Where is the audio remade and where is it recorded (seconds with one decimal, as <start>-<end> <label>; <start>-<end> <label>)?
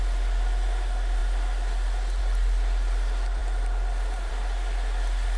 0.0-5.4 recorded